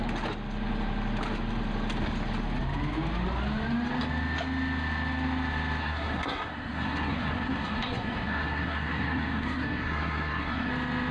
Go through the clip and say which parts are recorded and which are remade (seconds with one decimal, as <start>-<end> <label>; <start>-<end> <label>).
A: 0.0-5.8 recorded; 5.8-10.7 remade; 10.7-11.1 recorded